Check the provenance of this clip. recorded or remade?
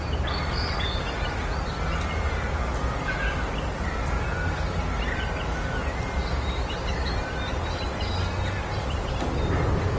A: recorded